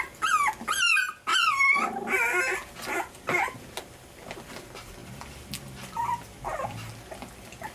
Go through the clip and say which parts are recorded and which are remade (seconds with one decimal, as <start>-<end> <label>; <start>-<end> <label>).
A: 0.0-5.0 recorded; 5.0-6.9 remade; 6.9-7.7 recorded

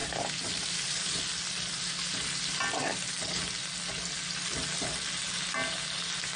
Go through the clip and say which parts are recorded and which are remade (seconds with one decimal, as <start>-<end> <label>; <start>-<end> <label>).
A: 0.0-1.2 remade; 1.2-6.4 recorded

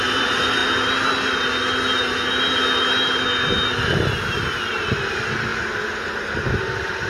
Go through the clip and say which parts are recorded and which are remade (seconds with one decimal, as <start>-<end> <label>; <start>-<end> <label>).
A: 0.0-0.6 remade; 0.6-4.6 recorded; 4.6-5.5 remade; 5.5-7.1 recorded

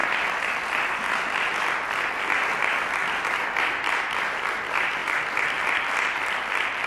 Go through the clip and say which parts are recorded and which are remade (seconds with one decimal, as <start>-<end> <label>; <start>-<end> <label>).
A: 0.0-6.9 remade

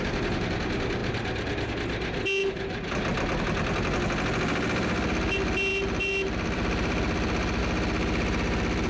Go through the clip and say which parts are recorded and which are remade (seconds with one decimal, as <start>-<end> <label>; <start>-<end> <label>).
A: 0.0-1.0 recorded; 1.0-1.7 remade; 1.7-5.7 recorded; 5.7-7.6 remade; 7.6-8.9 recorded

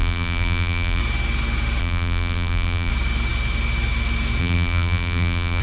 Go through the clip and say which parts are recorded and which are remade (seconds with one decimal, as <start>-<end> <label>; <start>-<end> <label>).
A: 0.0-1.0 remade; 1.0-1.8 recorded; 1.8-2.9 remade; 2.9-4.4 recorded; 4.4-5.6 remade